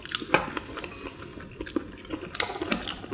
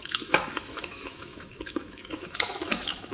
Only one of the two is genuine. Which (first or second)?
first